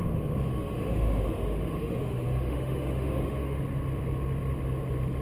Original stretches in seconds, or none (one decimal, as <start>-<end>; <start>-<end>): 0.0-0.5; 3.6-5.2

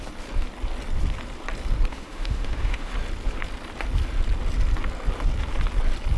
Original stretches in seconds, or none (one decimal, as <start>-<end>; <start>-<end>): 0.0-1.9; 2.9-6.2

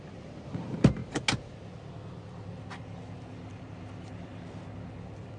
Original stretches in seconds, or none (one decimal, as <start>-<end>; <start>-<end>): 0.0-5.4

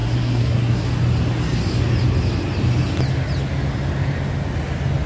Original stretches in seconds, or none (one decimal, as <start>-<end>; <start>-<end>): 0.9-5.1

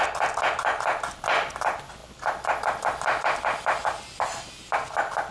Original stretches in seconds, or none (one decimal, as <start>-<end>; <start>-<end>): 0.0-5.3